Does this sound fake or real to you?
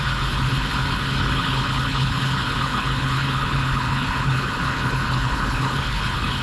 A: fake